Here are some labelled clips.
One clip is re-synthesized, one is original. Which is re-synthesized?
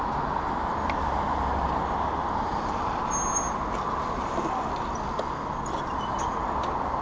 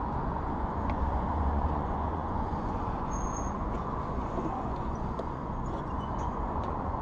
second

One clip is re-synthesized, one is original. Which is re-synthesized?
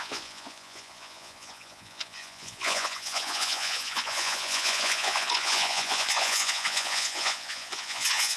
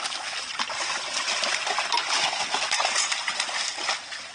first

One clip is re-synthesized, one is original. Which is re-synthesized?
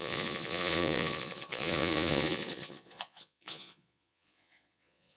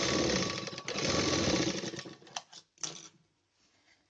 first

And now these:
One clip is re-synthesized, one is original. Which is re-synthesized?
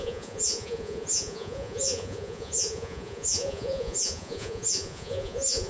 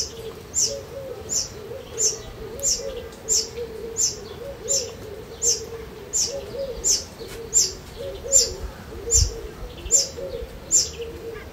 first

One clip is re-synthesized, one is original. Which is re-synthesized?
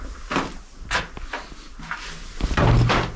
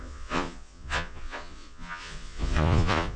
second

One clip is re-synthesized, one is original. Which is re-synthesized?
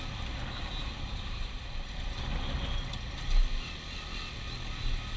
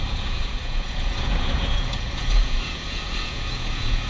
second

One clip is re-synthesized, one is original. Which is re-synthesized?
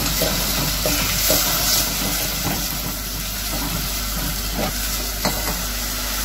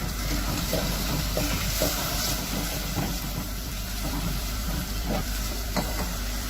second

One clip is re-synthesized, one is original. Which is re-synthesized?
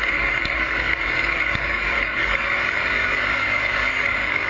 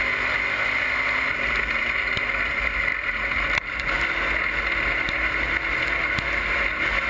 first